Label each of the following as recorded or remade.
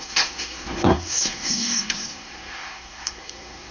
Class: remade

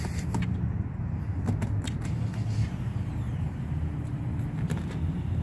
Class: recorded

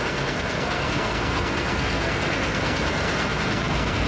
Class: remade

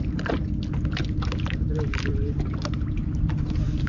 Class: recorded